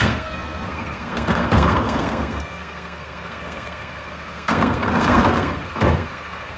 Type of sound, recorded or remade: remade